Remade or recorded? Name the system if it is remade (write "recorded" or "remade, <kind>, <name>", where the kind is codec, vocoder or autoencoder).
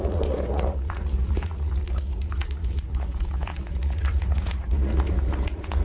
remade, vocoder, Vocos